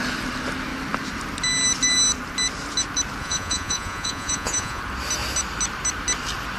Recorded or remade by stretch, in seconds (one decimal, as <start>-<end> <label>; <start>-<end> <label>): 0.0-3.2 recorded; 3.2-4.8 remade; 4.8-6.6 recorded